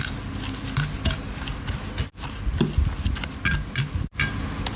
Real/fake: real